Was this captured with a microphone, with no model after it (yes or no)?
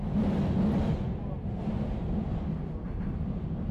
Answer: yes